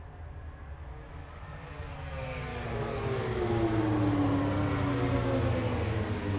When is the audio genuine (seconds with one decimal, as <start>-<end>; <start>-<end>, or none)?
0.0-1.2; 1.9-2.5; 3.4-6.4